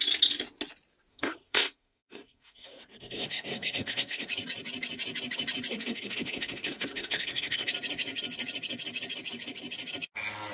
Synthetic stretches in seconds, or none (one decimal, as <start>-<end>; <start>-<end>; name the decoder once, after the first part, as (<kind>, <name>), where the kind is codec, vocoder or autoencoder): 1.1-4.3 (codec, SNAC); 5.7-7.7